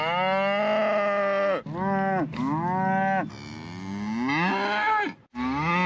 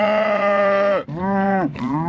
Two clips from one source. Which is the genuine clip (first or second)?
first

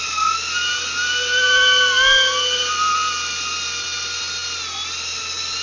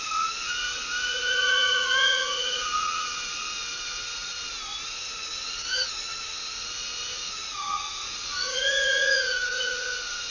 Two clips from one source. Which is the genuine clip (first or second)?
first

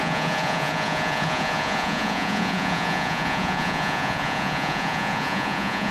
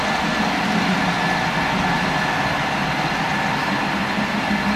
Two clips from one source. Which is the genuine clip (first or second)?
second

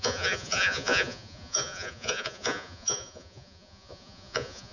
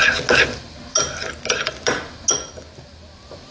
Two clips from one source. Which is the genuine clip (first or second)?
second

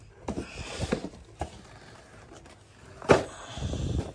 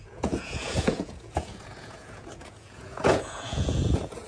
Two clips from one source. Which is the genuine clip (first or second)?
first